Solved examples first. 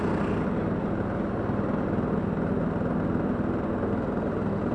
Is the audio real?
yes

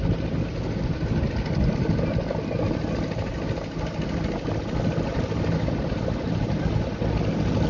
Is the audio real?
yes